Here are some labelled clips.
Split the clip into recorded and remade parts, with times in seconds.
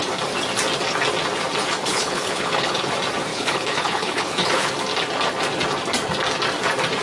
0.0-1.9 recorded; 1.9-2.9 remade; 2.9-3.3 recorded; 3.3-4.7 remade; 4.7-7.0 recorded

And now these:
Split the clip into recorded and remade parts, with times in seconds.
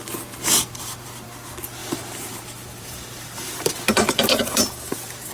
0.0-1.8 recorded; 1.8-5.3 remade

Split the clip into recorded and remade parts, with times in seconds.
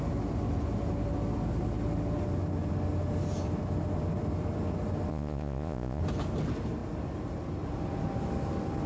0.0-5.1 recorded; 5.1-6.0 remade; 6.0-8.9 recorded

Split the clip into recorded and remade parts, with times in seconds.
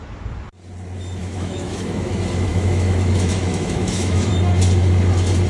0.0-1.2 recorded; 1.2-2.1 remade; 2.1-2.5 recorded; 2.5-4.3 remade; 4.3-5.5 recorded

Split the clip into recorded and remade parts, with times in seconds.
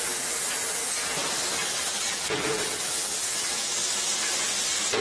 0.0-1.2 remade; 1.2-1.9 recorded; 1.9-3.8 remade; 3.8-5.0 recorded